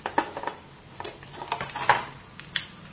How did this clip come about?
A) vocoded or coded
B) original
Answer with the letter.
B